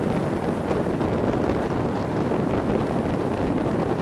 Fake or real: real